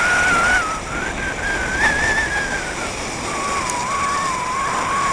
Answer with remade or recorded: recorded